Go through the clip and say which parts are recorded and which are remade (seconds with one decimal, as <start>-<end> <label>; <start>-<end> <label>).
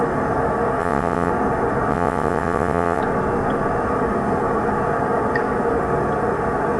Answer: 0.0-0.8 recorded; 0.8-1.3 remade; 1.3-1.9 recorded; 1.9-3.0 remade; 3.0-6.8 recorded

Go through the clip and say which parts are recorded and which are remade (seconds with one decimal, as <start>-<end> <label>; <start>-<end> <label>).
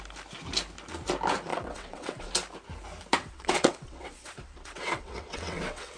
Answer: 0.0-1.5 recorded; 1.5-2.3 remade; 2.3-3.2 recorded; 3.2-6.0 remade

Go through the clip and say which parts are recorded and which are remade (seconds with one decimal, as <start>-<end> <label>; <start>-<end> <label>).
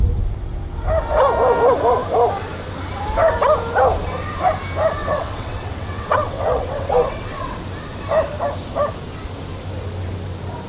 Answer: 0.0-5.0 recorded; 5.0-7.6 remade; 7.6-10.7 recorded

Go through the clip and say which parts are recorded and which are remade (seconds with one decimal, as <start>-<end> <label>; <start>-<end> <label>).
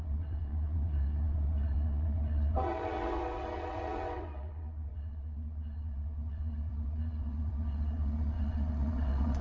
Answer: 0.0-9.4 remade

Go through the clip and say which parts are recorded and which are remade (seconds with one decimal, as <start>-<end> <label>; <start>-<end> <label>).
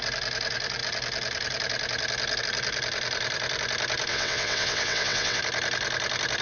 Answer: 0.0-4.1 recorded; 4.1-5.4 remade; 5.4-6.4 recorded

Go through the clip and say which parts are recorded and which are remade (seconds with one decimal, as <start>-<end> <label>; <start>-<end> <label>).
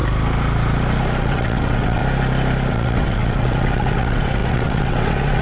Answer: 0.0-1.2 recorded; 1.2-2.0 remade; 2.0-2.7 recorded; 2.7-5.4 remade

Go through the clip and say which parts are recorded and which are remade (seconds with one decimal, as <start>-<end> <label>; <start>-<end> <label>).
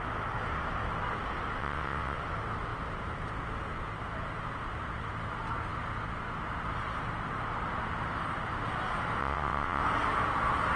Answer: 0.0-1.6 recorded; 1.6-2.2 remade; 2.2-9.2 recorded; 9.2-9.8 remade; 9.8-10.8 recorded